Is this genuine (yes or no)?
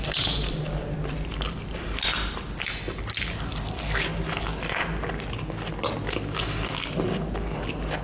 yes